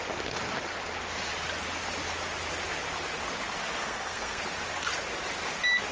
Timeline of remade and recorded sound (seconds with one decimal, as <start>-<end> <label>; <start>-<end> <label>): 0.0-3.8 recorded; 3.8-4.4 remade; 4.4-5.9 recorded